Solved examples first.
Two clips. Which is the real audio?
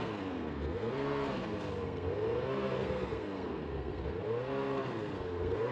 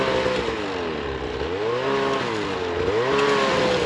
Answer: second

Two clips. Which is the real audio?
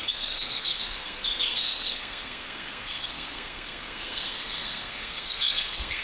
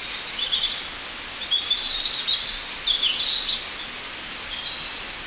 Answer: second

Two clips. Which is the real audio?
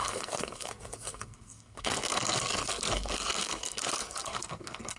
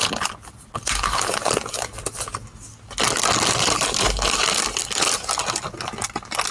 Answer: second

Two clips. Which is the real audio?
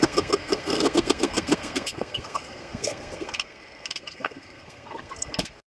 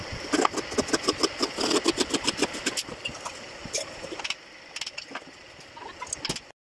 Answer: second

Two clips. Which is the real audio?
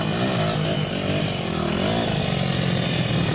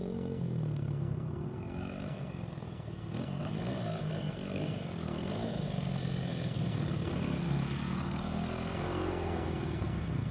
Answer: first